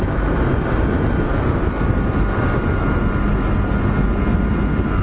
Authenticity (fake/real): real